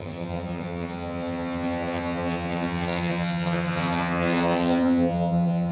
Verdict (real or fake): fake